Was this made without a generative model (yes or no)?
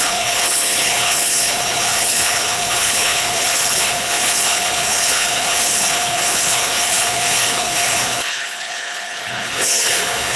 no